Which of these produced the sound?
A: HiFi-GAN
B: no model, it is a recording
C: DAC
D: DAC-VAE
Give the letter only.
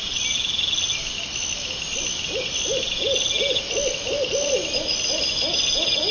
B